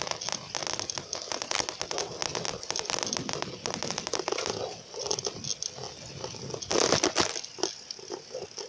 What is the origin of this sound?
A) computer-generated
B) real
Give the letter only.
B